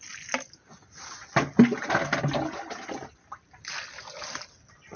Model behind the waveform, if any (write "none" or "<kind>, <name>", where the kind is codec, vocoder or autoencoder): none